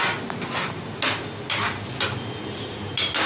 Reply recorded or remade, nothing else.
recorded